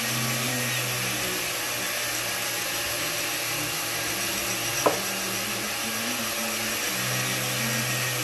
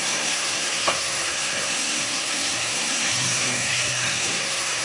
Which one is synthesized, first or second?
second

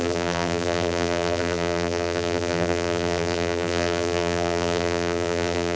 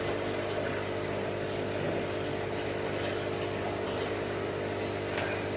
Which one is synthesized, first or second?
first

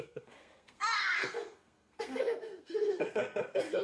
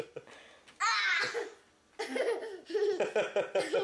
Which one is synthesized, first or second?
first